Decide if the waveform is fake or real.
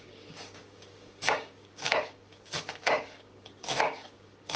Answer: fake